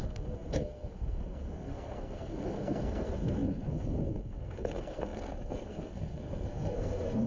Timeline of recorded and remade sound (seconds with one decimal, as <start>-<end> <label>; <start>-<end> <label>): 0.0-7.3 remade